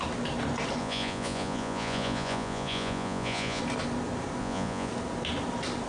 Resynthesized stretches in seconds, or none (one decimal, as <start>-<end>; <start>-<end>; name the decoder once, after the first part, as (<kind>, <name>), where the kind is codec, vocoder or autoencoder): 0.8-3.6 (vocoder, Vocos); 4.4-4.9